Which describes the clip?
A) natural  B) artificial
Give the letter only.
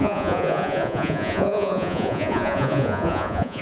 B